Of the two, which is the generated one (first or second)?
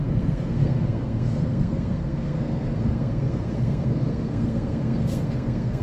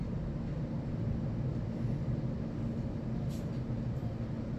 first